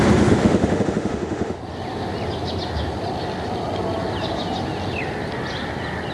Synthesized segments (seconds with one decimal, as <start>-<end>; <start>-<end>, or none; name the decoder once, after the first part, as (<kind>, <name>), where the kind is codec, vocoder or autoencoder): 0.4-1.6 (autoencoder, DAC-VAE)